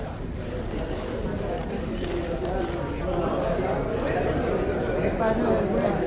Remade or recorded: recorded